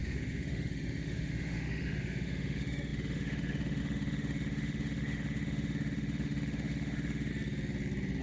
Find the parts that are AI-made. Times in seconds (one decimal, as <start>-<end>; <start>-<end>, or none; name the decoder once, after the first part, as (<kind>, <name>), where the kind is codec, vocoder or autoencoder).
0.0-7.3 (autoencoder, DAC-VAE)